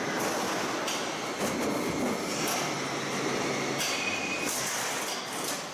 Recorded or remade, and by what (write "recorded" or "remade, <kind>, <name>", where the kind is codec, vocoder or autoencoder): recorded